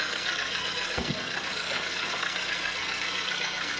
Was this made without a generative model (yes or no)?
no